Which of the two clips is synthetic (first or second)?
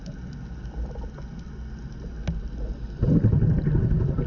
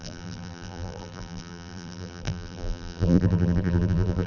second